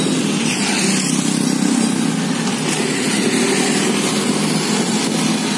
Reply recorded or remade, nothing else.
recorded